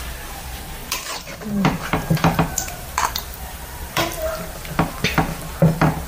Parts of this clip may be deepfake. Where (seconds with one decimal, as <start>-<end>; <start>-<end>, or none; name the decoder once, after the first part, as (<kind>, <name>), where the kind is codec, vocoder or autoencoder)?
0.8-4.5 (vocoder, BigVGAN v2)